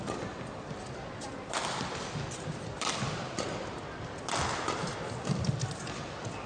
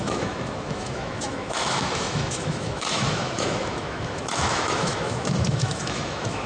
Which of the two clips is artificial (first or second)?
second